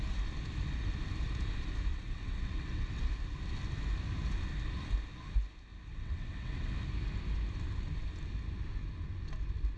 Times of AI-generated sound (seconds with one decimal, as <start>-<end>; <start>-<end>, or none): 1.9-3.0; 5.9-6.7